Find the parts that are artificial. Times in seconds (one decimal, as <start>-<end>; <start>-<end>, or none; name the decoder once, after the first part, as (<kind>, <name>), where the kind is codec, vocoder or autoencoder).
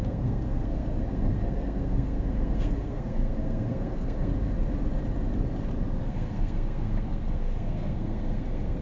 0.0-4.3 (codec, SNAC); 6.0-8.8